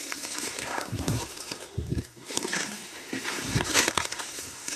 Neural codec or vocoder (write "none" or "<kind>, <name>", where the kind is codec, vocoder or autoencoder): codec, SNAC